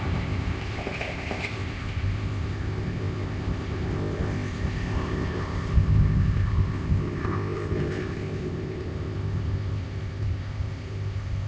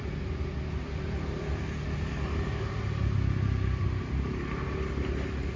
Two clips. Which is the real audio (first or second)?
second